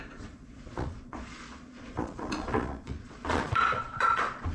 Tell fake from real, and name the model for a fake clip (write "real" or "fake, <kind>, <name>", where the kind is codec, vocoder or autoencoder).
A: fake, vocoder, Vocos